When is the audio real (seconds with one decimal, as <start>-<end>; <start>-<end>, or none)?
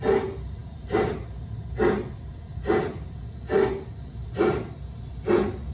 0.0-5.7